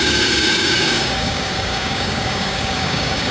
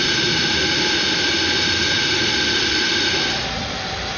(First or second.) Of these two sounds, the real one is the second